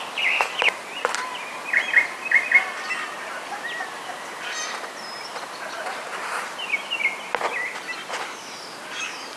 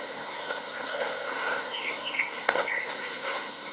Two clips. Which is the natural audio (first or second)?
first